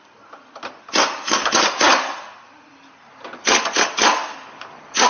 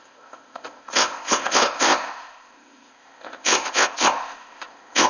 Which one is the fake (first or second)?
second